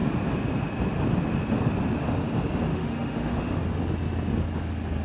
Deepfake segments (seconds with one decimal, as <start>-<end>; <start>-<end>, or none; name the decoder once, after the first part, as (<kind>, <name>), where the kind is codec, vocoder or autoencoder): 2.7-3.6 (autoencoder, DAC-VAE)